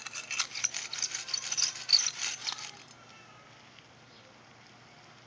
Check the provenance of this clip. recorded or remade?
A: recorded